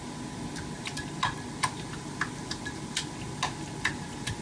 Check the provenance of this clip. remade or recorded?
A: recorded